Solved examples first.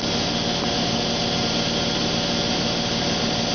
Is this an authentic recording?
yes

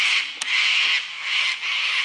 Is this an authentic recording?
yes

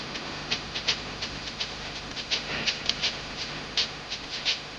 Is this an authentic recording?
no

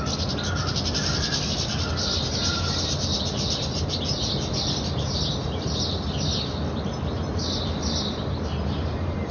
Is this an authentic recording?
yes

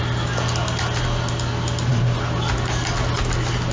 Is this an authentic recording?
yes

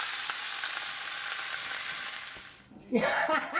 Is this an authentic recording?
yes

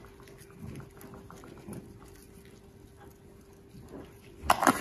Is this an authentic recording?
yes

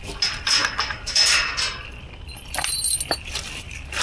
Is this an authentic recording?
yes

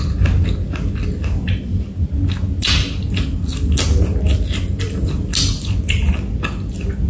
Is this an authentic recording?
yes